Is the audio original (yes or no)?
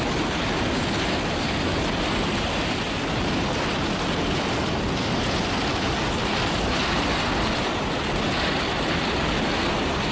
yes